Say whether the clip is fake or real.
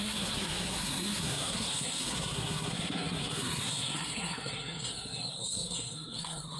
fake